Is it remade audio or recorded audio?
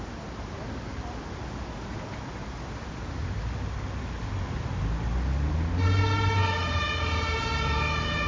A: recorded